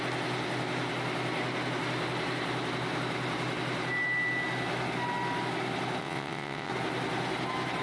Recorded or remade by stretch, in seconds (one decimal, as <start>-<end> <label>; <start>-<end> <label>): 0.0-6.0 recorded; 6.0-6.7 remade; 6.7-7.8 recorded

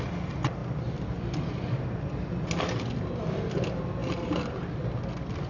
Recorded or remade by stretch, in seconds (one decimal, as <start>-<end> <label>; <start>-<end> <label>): 0.0-5.5 recorded

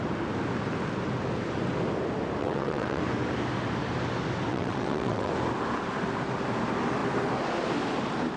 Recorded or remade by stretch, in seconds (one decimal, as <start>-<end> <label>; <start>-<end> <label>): 0.0-2.4 recorded; 2.4-3.0 remade; 3.0-4.5 recorded; 4.5-5.3 remade; 5.3-8.4 recorded

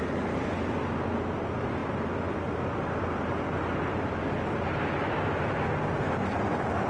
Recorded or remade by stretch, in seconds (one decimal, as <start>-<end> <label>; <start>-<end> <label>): 0.0-6.9 recorded

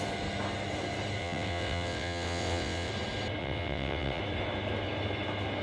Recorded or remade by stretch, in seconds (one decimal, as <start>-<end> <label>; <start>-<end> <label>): 0.0-1.2 recorded; 1.2-2.9 remade; 2.9-3.4 recorded; 3.4-4.2 remade; 4.2-5.6 recorded